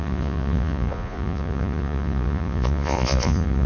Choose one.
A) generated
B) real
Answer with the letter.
A